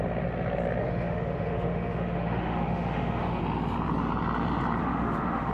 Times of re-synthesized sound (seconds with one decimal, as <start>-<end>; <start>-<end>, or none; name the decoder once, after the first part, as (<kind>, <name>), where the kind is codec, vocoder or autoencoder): 0.8-3.4 (autoencoder, DAC-VAE); 4.8-5.5